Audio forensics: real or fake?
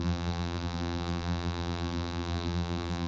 fake